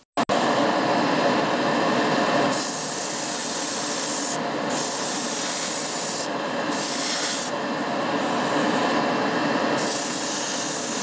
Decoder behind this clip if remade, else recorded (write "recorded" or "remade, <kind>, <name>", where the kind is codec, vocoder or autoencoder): recorded